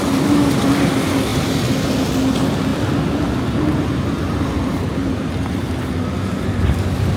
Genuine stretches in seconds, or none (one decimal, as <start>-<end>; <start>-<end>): 0.0-1.3; 2.1-2.7; 5.3-7.2